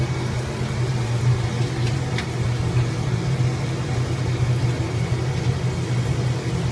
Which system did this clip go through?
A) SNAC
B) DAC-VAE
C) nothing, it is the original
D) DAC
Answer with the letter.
C